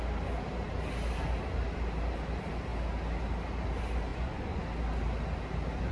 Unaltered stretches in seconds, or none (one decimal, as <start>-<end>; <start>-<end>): 0.0-4.1; 4.6-5.9